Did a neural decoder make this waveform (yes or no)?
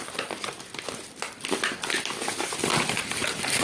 no